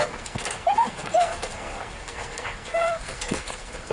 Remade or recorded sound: remade